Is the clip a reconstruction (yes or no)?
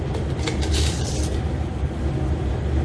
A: no